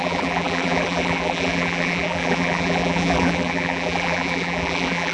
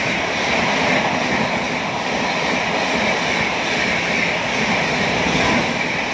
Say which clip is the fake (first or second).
first